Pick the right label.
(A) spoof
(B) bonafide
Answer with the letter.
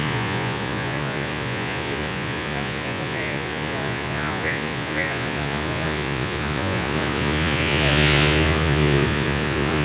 A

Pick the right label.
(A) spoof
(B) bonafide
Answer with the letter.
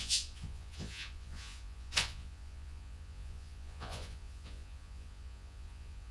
A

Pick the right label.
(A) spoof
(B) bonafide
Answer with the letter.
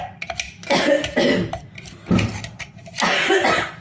B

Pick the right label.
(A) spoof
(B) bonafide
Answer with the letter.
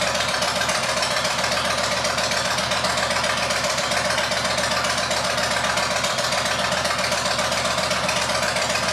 B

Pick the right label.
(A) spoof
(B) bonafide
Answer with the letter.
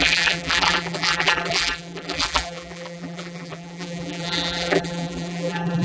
A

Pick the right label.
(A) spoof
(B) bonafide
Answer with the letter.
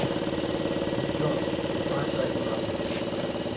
B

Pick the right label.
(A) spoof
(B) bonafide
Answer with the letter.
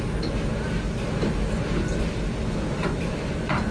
B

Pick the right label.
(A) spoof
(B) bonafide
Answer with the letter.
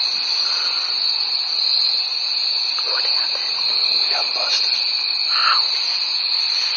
B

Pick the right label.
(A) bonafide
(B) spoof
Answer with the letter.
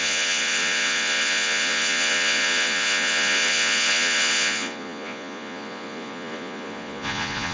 B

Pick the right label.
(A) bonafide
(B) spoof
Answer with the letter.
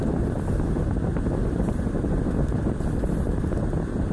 A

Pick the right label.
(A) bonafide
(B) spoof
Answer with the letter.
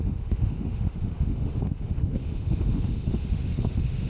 B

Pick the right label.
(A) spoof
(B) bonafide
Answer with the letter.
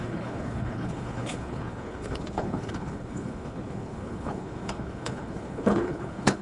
A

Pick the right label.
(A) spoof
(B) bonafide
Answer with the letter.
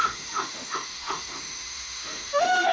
A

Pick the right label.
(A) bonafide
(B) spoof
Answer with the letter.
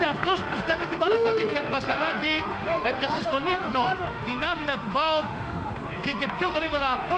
B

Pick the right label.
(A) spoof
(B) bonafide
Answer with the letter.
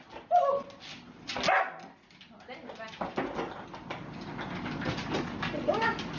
B